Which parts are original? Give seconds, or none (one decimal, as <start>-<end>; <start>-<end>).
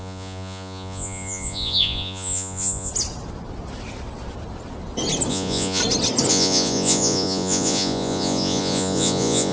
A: 2.9-5.3; 5.8-6.3